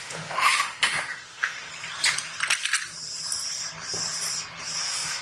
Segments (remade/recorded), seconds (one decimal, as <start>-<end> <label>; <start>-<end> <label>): 0.0-1.7 remade; 1.7-4.8 recorded; 4.8-5.2 remade